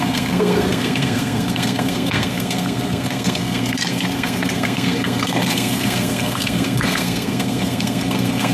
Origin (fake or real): fake